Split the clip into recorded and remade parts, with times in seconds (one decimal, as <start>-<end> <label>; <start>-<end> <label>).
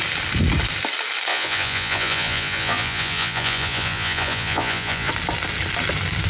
0.0-1.3 recorded; 1.3-5.1 remade; 5.1-6.3 recorded